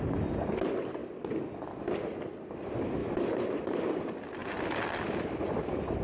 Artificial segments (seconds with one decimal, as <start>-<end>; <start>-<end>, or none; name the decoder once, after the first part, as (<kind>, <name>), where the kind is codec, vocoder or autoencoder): 3.0-3.6 (autoencoder, DAC-VAE)